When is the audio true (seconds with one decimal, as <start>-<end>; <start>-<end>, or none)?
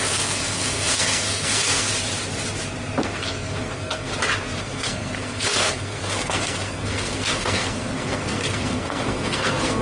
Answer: 1.9-3.0; 4.1-4.6